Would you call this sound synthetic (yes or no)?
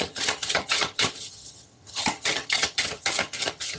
yes